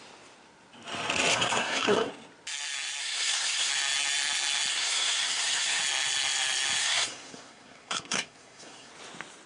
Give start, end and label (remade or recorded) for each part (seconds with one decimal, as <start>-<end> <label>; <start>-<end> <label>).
0.0-1.3 recorded; 1.3-2.1 remade; 2.1-3.0 recorded; 3.0-3.7 remade; 3.7-4.7 recorded; 4.7-5.8 remade; 5.8-6.8 recorded; 6.8-8.9 remade; 8.9-9.5 recorded